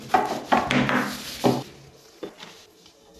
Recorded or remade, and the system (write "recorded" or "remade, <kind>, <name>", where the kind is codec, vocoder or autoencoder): recorded